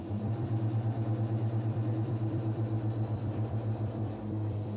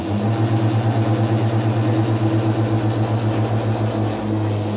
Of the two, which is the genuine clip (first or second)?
second